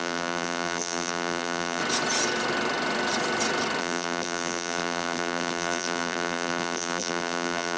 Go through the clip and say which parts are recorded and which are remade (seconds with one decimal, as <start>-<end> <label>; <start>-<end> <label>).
0.0-1.8 remade; 1.8-3.8 recorded; 3.8-7.8 remade